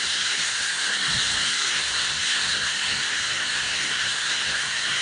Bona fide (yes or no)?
no